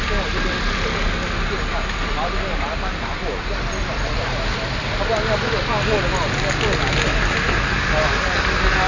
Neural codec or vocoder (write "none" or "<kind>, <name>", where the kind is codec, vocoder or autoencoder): none